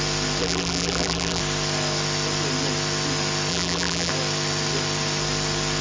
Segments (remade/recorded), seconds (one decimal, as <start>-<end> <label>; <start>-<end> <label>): 0.0-0.4 recorded; 0.4-1.4 remade; 1.4-3.5 recorded; 3.5-4.1 remade; 4.1-5.8 recorded